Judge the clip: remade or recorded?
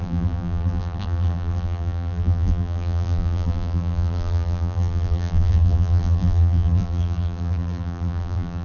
remade